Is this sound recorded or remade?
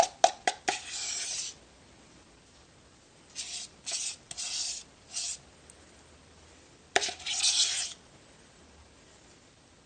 recorded